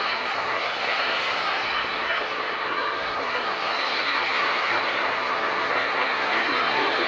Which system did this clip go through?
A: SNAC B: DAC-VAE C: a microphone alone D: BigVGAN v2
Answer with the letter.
A